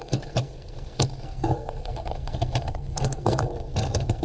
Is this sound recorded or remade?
remade